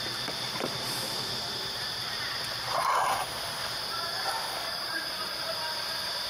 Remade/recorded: remade